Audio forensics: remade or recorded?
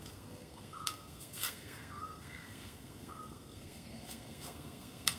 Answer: remade